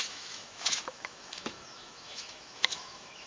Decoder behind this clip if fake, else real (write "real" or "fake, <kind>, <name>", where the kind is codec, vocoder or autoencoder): fake, autoencoder, DAC-VAE